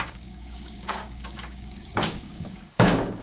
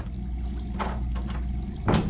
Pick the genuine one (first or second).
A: second